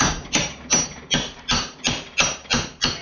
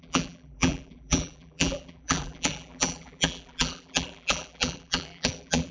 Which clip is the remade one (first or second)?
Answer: second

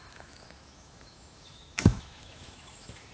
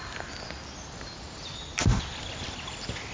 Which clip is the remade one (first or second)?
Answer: first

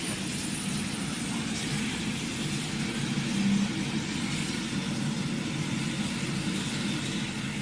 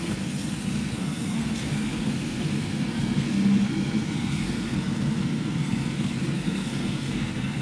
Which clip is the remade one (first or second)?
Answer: second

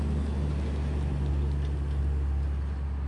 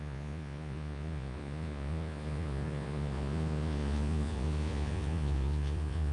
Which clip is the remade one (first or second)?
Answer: second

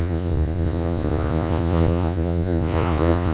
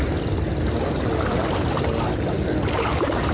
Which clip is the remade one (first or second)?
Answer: first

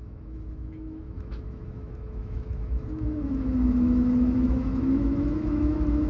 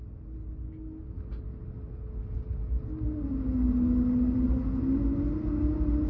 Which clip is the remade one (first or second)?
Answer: first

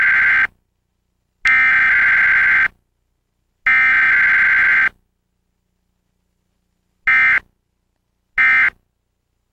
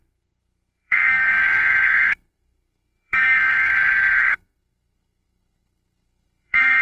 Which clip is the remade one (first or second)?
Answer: second